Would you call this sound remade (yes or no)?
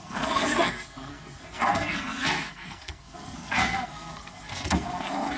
yes